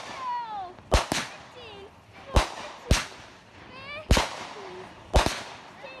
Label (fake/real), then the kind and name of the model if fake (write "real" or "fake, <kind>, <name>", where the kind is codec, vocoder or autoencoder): real